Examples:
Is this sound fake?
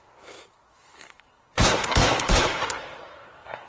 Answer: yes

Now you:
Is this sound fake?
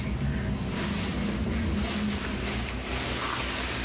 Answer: no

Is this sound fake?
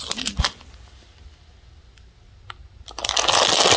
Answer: no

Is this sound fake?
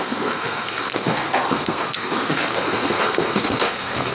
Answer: yes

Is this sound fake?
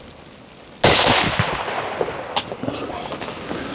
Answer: no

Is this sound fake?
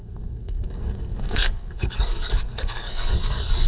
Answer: yes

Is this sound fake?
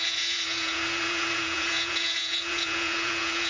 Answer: yes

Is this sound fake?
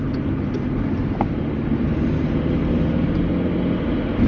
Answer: no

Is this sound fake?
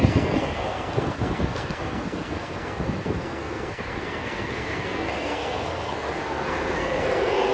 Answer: yes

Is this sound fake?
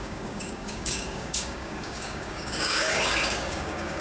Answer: yes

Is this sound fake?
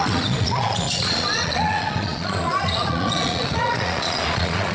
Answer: yes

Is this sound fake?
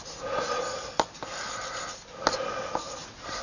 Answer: no